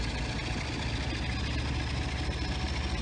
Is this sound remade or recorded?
recorded